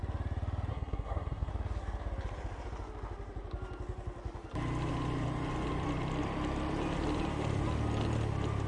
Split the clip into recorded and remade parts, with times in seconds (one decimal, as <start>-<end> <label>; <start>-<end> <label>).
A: 0.0-0.7 recorded; 0.7-1.5 remade; 1.5-8.7 recorded